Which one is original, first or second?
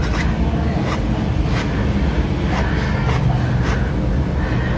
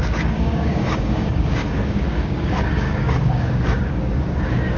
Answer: first